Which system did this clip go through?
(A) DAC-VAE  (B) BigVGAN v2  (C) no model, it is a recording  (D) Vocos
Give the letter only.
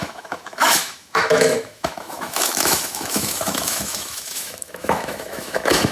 A